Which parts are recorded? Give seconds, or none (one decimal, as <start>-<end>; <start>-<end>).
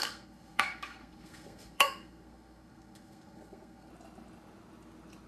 3.9-5.3